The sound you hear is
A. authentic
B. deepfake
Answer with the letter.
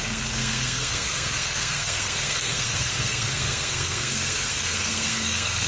B